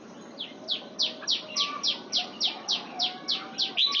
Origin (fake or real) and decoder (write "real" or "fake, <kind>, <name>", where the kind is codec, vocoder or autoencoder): real